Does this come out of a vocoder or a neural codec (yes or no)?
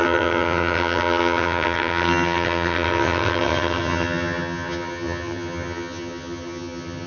yes